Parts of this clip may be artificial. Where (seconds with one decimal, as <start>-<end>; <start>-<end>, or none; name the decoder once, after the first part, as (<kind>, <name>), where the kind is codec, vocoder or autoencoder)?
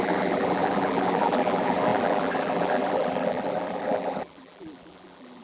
0.0-5.4 (vocoder, BigVGAN v2)